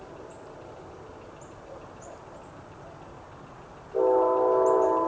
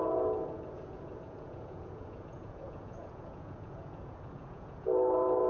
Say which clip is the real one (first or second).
first